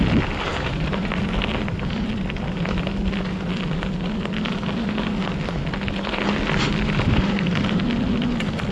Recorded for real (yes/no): yes